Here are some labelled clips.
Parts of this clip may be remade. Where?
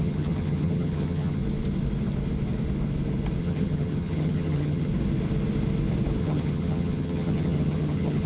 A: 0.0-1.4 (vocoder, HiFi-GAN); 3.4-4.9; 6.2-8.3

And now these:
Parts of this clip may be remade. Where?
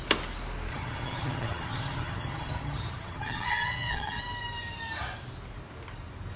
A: 0.7-4.2 (vocoder, HiFi-GAN)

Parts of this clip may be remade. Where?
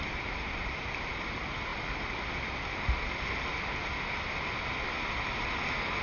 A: none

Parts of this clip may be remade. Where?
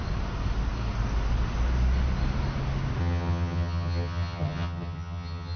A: 3.0-5.6 (vocoder, HiFi-GAN)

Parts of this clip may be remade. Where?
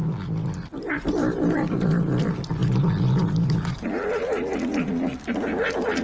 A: none